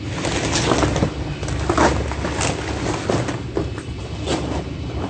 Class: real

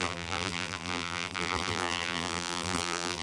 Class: fake